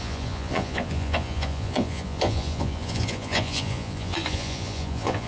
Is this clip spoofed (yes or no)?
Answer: yes